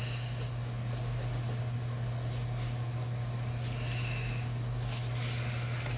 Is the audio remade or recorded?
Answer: recorded